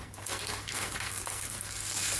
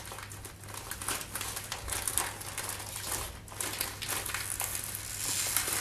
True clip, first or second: second